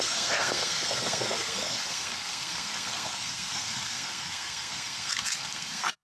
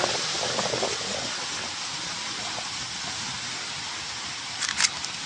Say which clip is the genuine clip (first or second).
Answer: second